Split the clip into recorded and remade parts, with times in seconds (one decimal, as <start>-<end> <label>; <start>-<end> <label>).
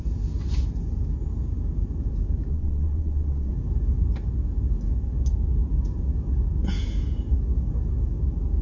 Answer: 0.0-2.5 recorded; 2.5-3.5 remade; 3.5-8.6 recorded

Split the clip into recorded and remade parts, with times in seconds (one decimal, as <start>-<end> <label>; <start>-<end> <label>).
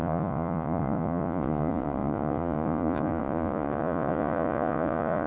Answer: 0.0-5.3 remade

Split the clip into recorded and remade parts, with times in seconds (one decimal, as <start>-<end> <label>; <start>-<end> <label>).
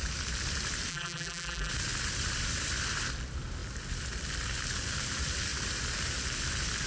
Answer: 0.0-0.9 recorded; 0.9-1.7 remade; 1.7-6.9 recorded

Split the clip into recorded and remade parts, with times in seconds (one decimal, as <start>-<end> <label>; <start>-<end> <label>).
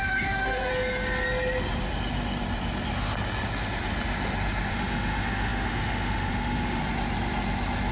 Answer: 0.0-0.7 remade; 0.7-4.7 recorded; 4.7-6.8 remade; 6.8-7.9 recorded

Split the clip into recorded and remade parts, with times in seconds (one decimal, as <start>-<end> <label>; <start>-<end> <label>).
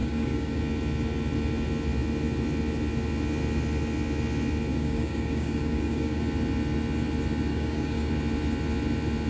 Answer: 0.0-0.6 remade; 0.6-4.7 recorded; 4.7-6.2 remade; 6.2-7.5 recorded; 7.5-8.1 remade; 8.1-9.3 recorded